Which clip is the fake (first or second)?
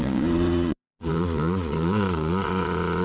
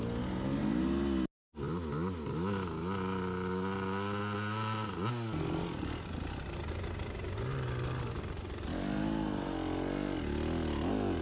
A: first